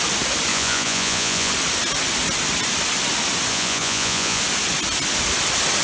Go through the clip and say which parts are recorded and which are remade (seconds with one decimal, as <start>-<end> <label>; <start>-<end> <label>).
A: 0.0-0.5 recorded; 0.5-1.5 remade; 1.5-3.5 recorded; 3.5-4.4 remade; 4.4-5.8 recorded